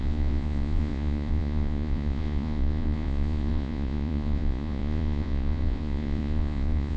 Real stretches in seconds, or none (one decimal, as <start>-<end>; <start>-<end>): none